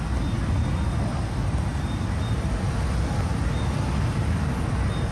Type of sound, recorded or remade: recorded